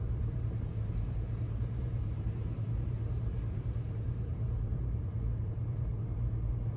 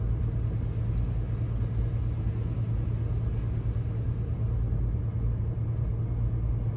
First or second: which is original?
second